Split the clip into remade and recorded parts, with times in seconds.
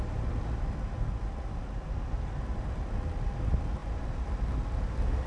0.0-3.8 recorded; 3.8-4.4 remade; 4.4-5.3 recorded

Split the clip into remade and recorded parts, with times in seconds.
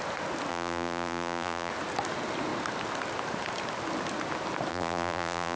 0.0-0.5 recorded; 0.5-1.7 remade; 1.7-4.7 recorded; 4.7-5.6 remade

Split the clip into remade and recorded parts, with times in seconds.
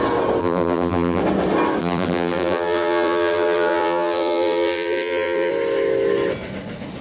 0.0-0.4 recorded; 0.4-1.2 remade; 1.2-1.8 recorded; 1.8-5.5 remade; 5.5-7.0 recorded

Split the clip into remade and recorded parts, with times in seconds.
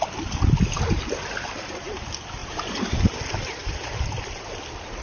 0.0-2.4 recorded; 2.4-3.0 remade; 3.0-3.6 recorded; 3.6-4.2 remade; 4.2-5.0 recorded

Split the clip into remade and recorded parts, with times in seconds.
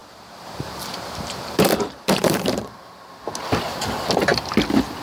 0.0-3.0 remade; 3.0-5.0 recorded